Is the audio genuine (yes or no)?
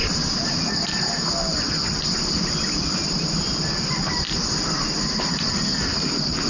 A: yes